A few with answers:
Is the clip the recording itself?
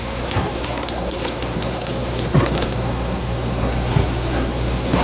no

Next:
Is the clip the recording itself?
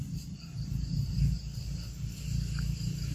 yes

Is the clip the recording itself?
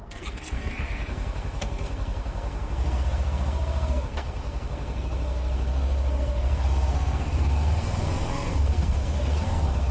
no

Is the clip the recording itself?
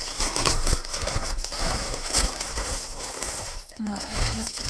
no